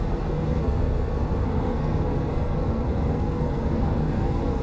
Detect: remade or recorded remade